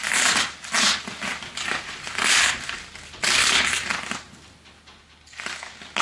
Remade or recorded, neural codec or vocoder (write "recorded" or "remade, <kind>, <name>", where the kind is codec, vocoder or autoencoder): recorded